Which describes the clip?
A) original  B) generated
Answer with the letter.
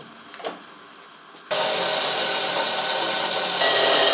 A